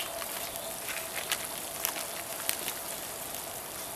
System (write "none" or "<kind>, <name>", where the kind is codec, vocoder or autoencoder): none